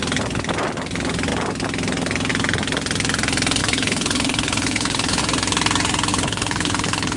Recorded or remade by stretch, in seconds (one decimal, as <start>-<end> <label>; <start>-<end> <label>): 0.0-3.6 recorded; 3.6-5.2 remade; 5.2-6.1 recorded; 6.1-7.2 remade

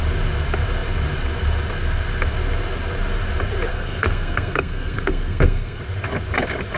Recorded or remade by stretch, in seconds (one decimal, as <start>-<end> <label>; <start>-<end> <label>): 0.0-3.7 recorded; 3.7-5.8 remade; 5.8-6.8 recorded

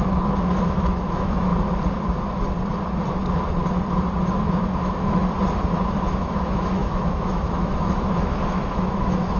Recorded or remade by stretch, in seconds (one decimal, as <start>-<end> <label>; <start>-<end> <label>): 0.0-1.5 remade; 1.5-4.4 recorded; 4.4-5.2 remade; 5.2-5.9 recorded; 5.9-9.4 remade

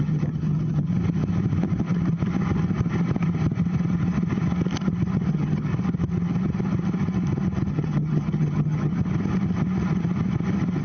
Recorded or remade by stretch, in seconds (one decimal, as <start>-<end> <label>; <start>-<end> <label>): 0.0-0.9 remade; 0.9-5.3 recorded; 5.3-5.7 remade; 5.7-7.7 recorded; 7.7-8.9 remade; 8.9-10.8 recorded

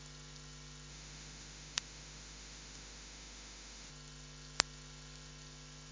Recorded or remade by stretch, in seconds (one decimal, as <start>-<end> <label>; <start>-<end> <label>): 0.0-0.9 recorded; 0.9-3.9 remade; 3.9-5.9 recorded

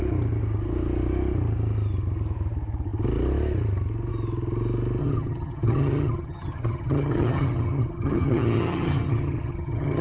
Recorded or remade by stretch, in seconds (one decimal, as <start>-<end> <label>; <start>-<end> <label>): 0.0-5.0 recorded; 5.0-10.0 remade

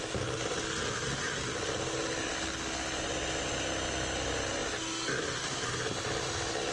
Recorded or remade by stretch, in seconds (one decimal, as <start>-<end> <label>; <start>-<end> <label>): 0.0-6.7 recorded

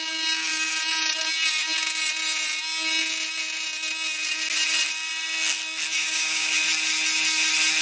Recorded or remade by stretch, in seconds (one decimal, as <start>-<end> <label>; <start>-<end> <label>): 0.0-6.0 recorded; 6.0-6.6 remade; 6.6-7.8 recorded